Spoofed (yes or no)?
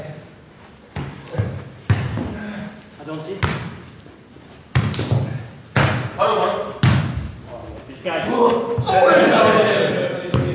no